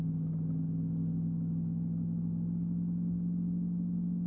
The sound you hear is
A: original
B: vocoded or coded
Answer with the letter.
A